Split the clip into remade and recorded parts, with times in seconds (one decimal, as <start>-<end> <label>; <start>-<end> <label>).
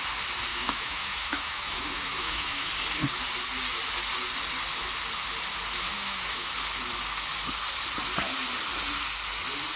0.0-0.5 recorded; 0.5-2.7 remade; 2.7-5.9 recorded; 5.9-6.5 remade; 6.5-9.8 recorded